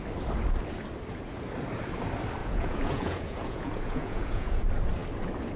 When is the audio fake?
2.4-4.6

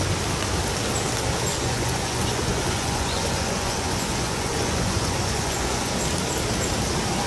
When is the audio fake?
1.5-5.9

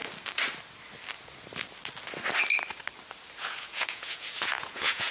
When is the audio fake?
3.4-5.1

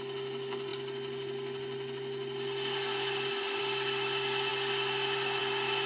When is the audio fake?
none

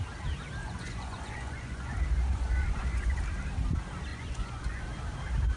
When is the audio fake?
0.6-1.9; 2.3-3.2; 4.1-4.8

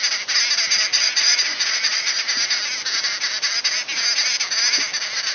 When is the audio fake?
0.9-2.2

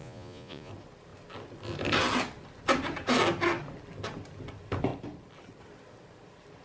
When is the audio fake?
0.0-0.7